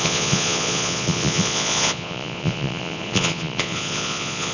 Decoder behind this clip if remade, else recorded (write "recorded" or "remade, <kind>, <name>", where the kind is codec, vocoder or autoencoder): remade, vocoder, Vocos